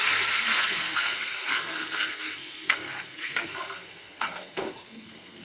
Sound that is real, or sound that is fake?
fake